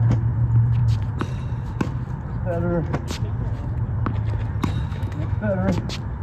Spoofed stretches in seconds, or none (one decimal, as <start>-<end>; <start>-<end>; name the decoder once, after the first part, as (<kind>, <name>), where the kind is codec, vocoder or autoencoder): 4.9-5.8 (autoencoder, DAC-VAE)